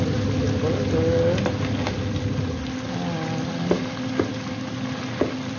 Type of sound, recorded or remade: recorded